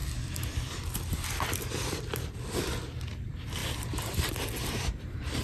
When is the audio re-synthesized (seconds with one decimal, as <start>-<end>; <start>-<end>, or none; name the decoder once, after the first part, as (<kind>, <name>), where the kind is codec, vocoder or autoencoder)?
3.2-3.6 (vocoder, BigVGAN v2); 5.0-5.4